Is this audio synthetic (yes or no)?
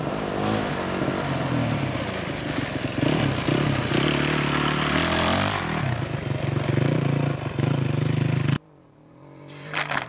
no